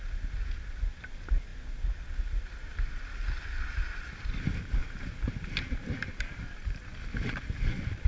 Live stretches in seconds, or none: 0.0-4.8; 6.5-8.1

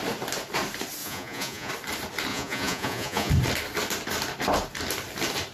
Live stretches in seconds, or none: 0.0-1.0; 1.7-2.3; 3.3-5.5

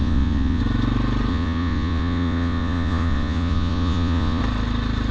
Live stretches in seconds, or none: 0.6-1.3; 4.4-5.1

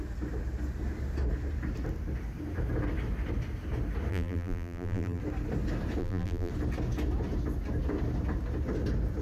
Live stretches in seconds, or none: 0.0-4.1; 5.2-6.0; 6.5-9.2

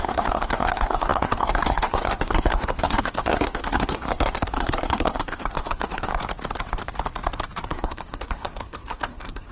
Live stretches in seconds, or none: 6.1-7.7